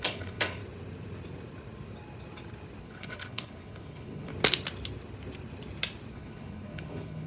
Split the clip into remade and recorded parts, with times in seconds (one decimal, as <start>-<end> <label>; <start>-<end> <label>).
0.0-0.6 remade; 0.6-2.8 recorded; 2.8-4.3 remade; 4.3-6.1 recorded; 6.1-7.3 remade